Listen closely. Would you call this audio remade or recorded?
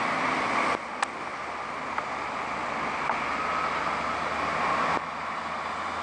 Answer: recorded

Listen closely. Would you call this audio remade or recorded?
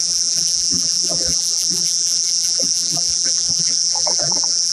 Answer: remade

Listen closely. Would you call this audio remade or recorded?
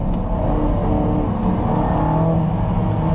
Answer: recorded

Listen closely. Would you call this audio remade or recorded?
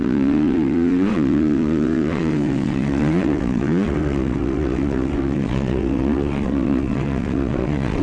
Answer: remade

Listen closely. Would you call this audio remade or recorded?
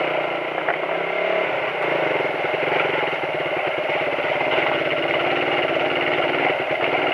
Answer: recorded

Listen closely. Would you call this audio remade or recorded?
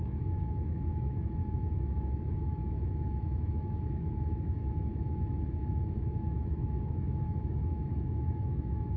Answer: remade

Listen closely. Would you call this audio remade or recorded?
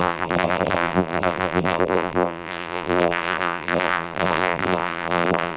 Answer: remade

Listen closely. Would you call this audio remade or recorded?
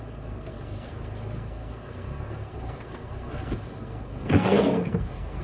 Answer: remade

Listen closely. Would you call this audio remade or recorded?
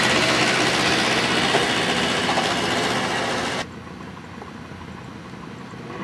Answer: recorded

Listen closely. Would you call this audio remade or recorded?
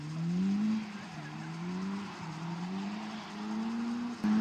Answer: recorded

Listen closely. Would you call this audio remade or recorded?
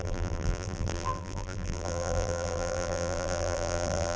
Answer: remade